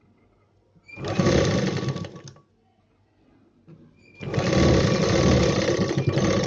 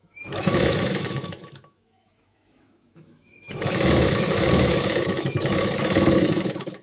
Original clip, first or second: first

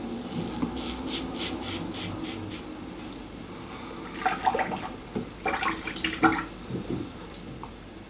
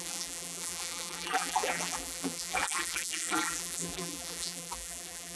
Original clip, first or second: first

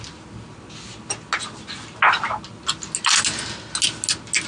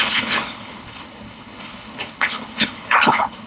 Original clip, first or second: first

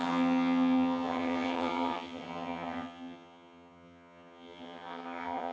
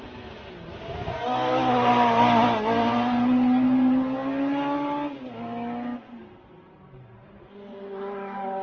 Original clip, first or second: second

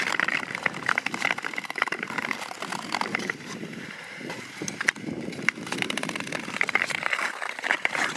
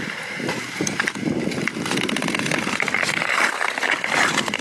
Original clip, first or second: second